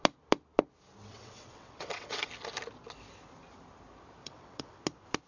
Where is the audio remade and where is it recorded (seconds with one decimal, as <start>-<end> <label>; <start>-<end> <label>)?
0.0-1.1 recorded; 1.1-2.3 remade; 2.3-4.2 recorded; 4.2-4.8 remade; 4.8-5.3 recorded